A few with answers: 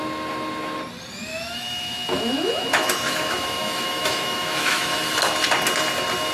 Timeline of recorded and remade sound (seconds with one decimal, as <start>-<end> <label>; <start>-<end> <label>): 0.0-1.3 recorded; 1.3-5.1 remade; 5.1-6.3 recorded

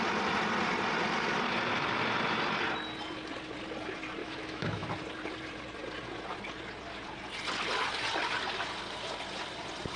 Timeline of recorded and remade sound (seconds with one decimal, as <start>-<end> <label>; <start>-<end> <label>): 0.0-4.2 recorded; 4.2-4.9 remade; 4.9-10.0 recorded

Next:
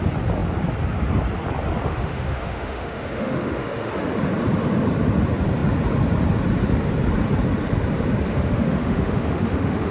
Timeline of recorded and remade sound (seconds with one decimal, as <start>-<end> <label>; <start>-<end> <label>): 0.0-1.9 recorded; 1.9-3.9 remade; 3.9-8.3 recorded; 8.3-9.9 remade

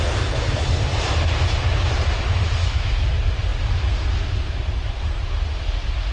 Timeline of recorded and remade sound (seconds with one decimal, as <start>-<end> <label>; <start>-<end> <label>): 0.0-2.6 recorded; 2.6-3.1 remade; 3.1-6.1 recorded